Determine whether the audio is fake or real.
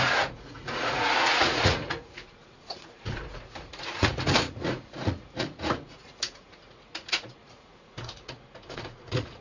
fake